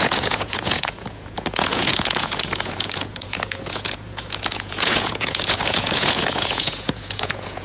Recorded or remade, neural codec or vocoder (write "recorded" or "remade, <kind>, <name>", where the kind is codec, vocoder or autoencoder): remade, vocoder, Vocos